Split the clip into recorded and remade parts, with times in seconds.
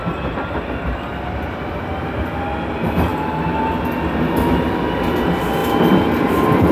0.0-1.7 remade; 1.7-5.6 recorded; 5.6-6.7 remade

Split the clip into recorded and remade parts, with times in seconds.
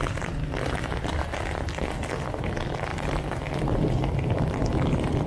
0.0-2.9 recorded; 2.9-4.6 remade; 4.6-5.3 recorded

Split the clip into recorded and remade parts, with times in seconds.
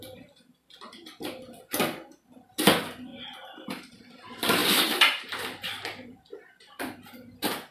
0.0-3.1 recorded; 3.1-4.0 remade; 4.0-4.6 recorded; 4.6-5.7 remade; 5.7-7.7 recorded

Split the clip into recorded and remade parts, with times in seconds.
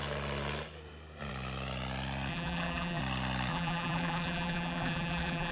0.0-2.3 recorded; 2.3-3.0 remade; 3.0-3.5 recorded; 3.5-5.5 remade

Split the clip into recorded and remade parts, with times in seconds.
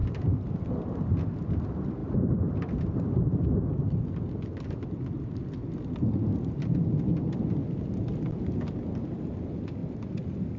0.0-2.0 recorded; 2.0-3.5 remade; 3.5-10.6 recorded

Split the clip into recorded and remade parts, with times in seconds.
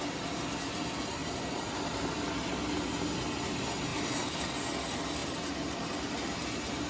0.0-1.2 recorded; 1.2-2.2 remade; 2.2-3.9 recorded; 3.9-4.4 remade; 4.4-5.2 recorded; 5.2-5.8 remade; 5.8-6.9 recorded